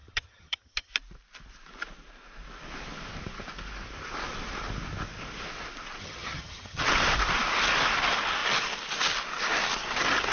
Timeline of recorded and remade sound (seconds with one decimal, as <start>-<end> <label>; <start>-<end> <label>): 0.0-0.9 remade; 0.9-6.0 recorded; 6.0-6.9 remade; 6.9-10.3 recorded